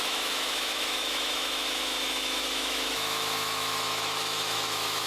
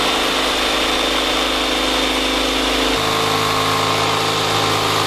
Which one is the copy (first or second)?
first